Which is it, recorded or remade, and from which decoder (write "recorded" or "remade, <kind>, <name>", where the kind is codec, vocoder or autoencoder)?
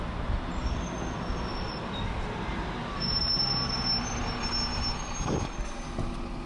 recorded